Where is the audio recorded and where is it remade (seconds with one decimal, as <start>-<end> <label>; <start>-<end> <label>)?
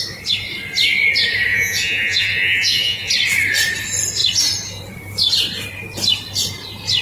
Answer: 0.0-1.5 recorded; 1.5-3.1 remade; 3.1-7.0 recorded